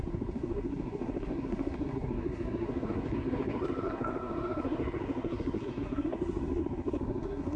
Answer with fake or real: fake